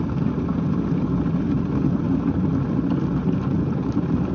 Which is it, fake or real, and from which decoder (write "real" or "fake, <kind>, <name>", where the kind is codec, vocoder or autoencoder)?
real